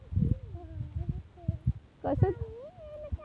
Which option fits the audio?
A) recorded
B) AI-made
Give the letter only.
A